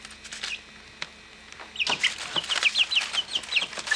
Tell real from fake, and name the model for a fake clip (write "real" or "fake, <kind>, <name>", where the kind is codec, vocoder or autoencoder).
real